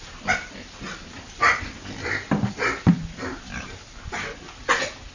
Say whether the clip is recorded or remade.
recorded